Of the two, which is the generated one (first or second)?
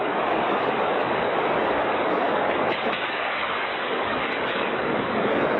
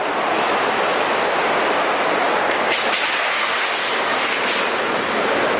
first